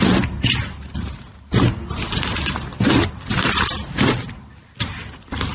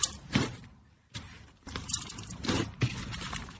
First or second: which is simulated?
second